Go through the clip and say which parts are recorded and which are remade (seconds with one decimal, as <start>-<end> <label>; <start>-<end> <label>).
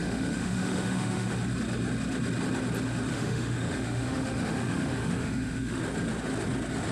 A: 0.0-1.3 remade; 1.3-3.1 recorded; 3.1-5.8 remade; 5.8-6.9 recorded